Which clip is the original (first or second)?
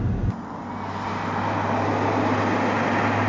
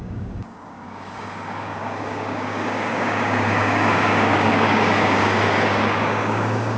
first